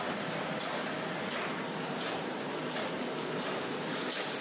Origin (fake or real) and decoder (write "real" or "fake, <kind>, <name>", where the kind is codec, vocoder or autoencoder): real